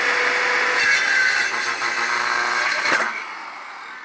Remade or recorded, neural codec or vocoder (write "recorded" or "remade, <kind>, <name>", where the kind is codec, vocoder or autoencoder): recorded